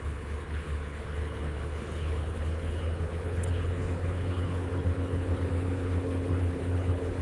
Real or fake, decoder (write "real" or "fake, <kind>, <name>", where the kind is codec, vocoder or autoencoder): fake, codec, HILCodec